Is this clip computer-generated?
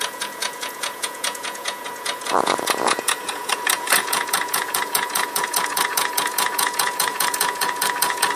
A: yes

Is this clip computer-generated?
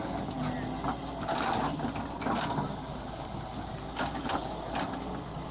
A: no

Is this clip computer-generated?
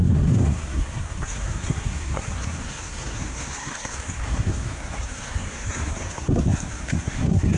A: yes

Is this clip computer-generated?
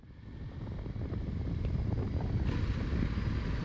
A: no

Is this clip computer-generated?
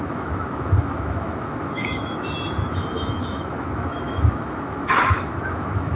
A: yes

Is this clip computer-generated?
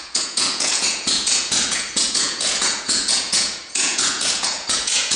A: yes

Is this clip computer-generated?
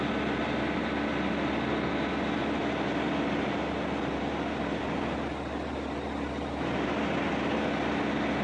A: no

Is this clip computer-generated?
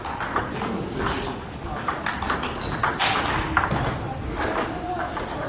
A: no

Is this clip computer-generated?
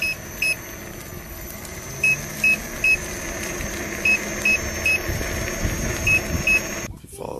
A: no